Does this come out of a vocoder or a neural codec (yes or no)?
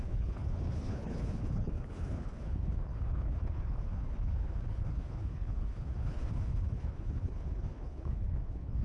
yes